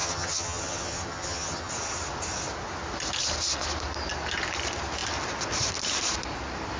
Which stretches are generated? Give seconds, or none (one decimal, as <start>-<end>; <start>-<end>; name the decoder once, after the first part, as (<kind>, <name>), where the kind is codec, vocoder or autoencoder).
0.0-1.7 (vocoder, HiFi-GAN)

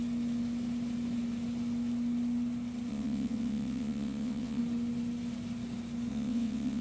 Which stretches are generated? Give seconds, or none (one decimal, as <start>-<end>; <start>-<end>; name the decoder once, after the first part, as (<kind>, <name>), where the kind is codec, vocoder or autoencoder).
2.9-4.6 (vocoder, WaveNeXt); 6.1-6.8

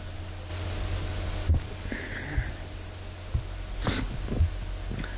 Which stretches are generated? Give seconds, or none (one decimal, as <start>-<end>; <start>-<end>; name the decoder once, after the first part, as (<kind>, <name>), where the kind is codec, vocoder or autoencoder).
none

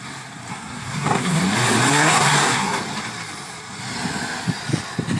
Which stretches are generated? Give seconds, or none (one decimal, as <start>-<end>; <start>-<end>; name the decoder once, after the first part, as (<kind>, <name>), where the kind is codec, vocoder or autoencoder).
0.5-1.4 (codec, SNAC); 1.9-2.8

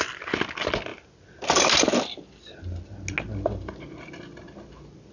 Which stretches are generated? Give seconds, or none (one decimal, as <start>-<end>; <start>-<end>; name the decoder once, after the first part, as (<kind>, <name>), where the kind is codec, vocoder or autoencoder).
none

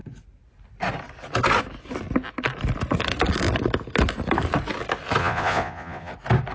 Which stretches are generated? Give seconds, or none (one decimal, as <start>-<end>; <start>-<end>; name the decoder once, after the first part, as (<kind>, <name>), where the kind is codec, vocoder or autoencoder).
5.2-6.1 (vocoder, Vocos)

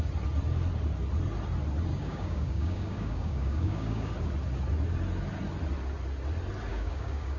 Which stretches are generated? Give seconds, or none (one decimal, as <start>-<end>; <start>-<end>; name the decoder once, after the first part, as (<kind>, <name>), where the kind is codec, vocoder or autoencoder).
1.9-4.1 (codec, DAC); 6.7-7.4